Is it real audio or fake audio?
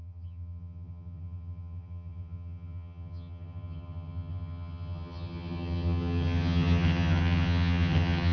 fake